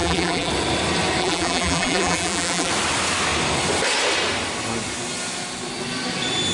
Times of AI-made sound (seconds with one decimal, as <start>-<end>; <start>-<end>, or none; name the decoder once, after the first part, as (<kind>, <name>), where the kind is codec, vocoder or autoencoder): 0.0-0.5 (vocoder, BigVGAN v2); 1.2-2.7